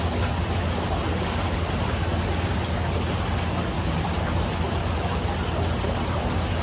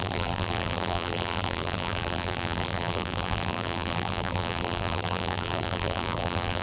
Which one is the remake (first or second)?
second